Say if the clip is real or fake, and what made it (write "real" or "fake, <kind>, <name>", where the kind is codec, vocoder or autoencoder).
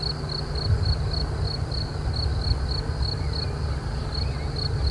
real